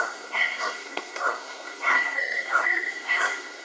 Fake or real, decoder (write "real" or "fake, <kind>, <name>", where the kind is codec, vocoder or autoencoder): fake, codec, SNAC